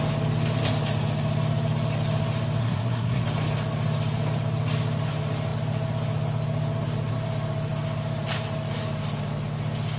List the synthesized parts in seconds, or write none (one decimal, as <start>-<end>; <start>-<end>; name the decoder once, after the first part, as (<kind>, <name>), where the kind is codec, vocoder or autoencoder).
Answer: 2.6-3.2 (codec, SNAC)